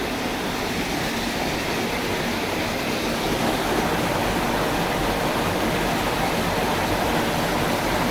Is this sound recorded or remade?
recorded